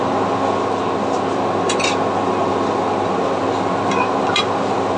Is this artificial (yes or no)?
no